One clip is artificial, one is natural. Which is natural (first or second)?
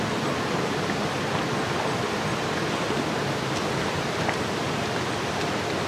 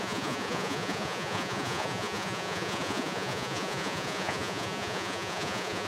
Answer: first